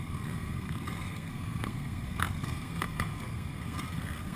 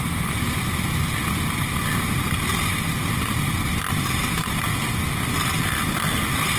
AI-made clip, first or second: first